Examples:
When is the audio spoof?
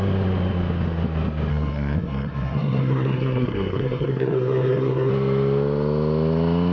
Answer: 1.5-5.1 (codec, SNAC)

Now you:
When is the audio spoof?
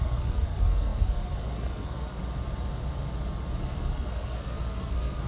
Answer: 0.0-2.2 (codec, SNAC); 3.6-5.3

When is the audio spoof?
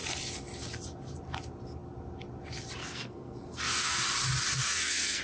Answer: 2.8-4.0 (codec, SNAC); 4.5-5.2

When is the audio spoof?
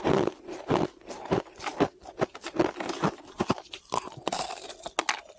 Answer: none